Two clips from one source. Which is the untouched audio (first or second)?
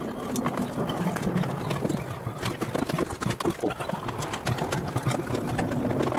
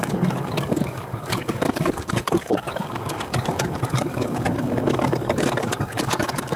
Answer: first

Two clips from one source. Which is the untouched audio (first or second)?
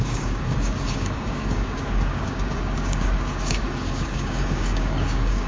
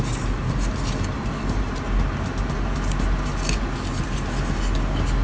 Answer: second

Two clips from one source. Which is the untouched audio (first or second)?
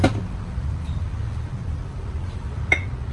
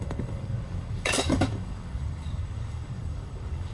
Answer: first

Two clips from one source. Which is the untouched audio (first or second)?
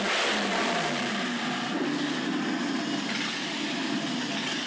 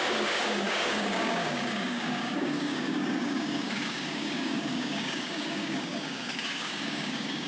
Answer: first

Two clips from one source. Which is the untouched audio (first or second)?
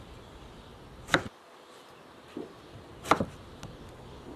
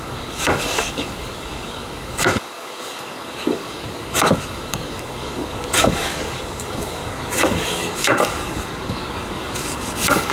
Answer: first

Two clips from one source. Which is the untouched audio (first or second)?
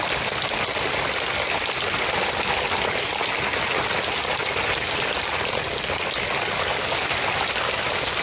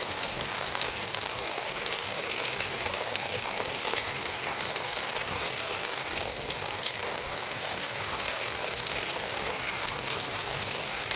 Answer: first